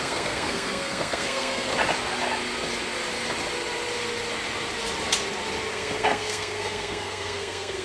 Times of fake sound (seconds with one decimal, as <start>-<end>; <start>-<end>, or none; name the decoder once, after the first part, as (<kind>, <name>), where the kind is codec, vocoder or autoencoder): 0.0-1.7 (codec, SNAC); 5.7-7.8